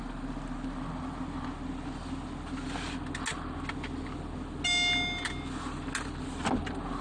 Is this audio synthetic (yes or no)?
no